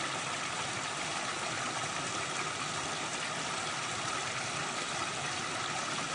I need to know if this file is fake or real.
real